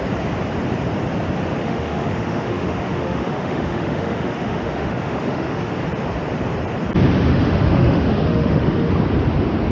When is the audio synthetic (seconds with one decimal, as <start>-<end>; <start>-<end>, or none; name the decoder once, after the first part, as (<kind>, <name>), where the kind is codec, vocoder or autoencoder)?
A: 1.6-5.7 (autoencoder, DAC-VAE); 7.3-8.9